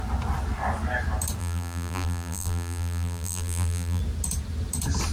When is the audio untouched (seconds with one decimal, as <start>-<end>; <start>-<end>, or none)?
0.0-1.4; 4.0-5.1